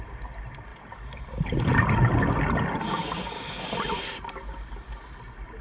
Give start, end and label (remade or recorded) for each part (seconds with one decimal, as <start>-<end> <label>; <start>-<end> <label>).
0.0-5.6 recorded